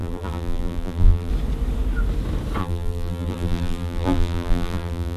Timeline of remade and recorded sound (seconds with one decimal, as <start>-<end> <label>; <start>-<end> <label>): 0.0-1.3 remade; 1.3-2.6 recorded; 2.6-5.2 remade